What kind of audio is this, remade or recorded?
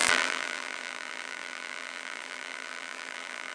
remade